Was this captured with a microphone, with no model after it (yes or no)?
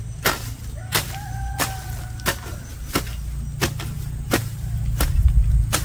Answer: yes